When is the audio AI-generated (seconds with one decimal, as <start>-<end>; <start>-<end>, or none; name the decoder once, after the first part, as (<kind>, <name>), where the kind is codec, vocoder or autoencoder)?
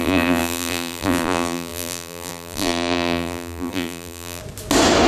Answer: 0.0-4.4 (vocoder, BigVGAN v2)